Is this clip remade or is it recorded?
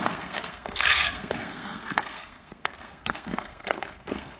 remade